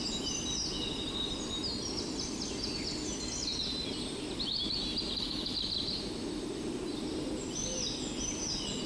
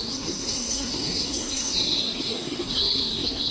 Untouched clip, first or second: first